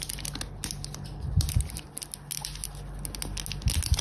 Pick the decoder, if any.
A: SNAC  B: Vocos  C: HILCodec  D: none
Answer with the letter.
D